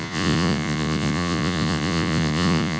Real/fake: fake